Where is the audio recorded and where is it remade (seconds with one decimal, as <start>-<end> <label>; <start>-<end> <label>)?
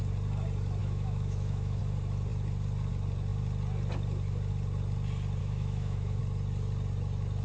0.0-0.8 recorded; 0.8-1.8 remade; 1.8-5.4 recorded; 5.4-6.2 remade; 6.2-7.4 recorded